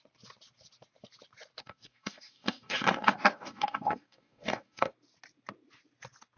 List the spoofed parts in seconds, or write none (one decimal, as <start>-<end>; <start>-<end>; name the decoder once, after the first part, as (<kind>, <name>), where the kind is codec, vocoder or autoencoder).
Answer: 1.6-4.9 (codec, DAC)

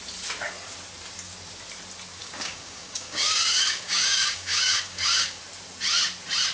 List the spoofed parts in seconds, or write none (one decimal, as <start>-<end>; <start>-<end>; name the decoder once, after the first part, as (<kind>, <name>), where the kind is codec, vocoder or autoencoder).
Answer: 2.2-5.4 (codec, DAC)